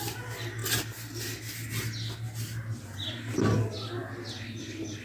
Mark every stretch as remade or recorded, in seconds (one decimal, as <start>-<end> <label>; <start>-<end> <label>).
0.0-5.0 recorded